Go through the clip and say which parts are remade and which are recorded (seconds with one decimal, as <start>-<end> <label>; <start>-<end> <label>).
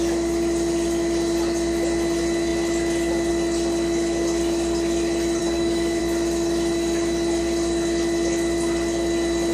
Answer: 0.0-5.4 recorded; 5.4-6.0 remade; 6.0-9.5 recorded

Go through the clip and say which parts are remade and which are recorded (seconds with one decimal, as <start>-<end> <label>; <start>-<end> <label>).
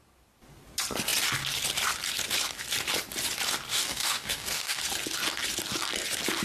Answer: 0.0-3.7 recorded; 3.7-4.8 remade; 4.8-6.4 recorded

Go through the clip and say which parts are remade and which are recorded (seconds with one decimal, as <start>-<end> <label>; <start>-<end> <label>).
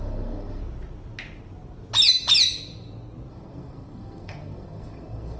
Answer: 0.0-0.6 remade; 0.6-3.3 recorded; 3.3-5.4 remade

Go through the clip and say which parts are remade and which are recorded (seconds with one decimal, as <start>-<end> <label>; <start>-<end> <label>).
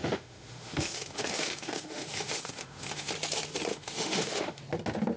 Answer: 0.0-3.1 remade; 3.1-3.7 recorded; 3.7-4.6 remade; 4.6-5.2 recorded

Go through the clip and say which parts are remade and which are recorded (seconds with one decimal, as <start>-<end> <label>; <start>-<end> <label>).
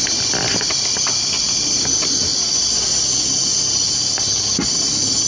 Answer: 0.0-5.3 recorded